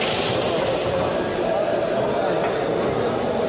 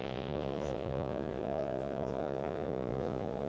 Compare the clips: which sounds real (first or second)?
first